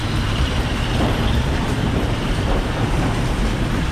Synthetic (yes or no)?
yes